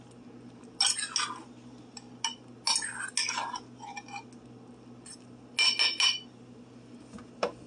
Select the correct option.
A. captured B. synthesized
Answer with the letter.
A